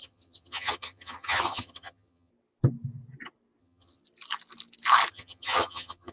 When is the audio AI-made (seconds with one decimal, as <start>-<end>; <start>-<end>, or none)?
0.0-2.3; 3.6-4.0; 5.1-6.1